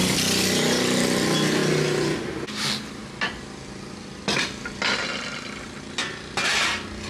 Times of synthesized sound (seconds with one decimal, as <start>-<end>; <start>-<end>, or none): none